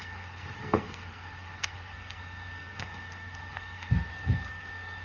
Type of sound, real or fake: fake